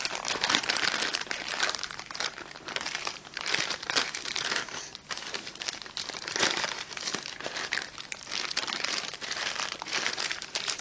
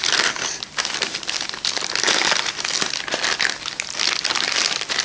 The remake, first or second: first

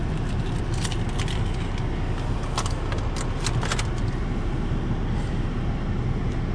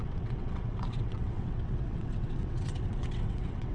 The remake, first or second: second